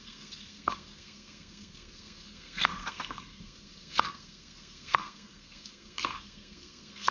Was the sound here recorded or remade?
remade